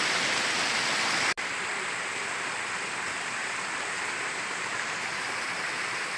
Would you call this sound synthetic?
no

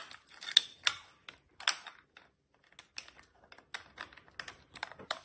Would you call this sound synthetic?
no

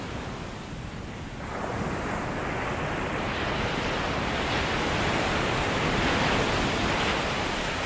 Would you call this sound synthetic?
no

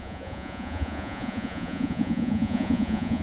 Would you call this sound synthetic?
yes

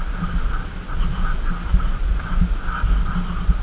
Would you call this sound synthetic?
no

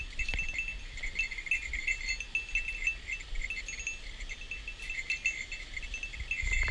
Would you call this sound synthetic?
no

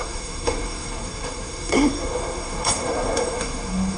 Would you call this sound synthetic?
yes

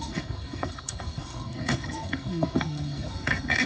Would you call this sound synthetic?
yes